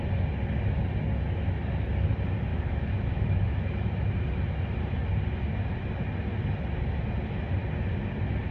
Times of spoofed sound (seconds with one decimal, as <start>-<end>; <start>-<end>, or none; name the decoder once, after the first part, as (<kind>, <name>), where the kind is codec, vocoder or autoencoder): 2.5-3.9 (autoencoder, DAC-VAE)